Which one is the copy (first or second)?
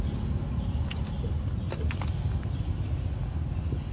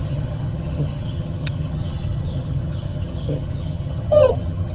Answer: second